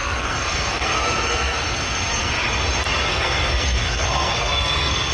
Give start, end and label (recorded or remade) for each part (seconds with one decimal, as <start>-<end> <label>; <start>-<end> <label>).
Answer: 0.0-2.3 remade; 2.3-3.1 recorded; 3.1-5.1 remade